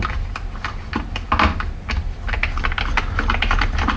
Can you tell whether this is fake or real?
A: real